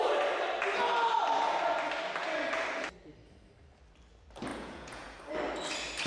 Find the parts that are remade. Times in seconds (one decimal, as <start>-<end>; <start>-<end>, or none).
4.5-5.2